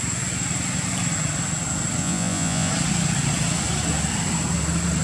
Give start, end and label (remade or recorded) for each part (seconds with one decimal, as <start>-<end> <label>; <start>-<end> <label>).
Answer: 0.0-2.0 recorded; 2.0-2.7 remade; 2.7-5.0 recorded